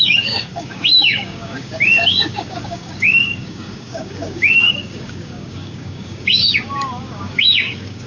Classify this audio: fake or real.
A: fake